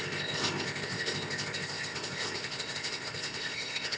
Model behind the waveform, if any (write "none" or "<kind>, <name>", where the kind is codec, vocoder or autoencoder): codec, ZipCodec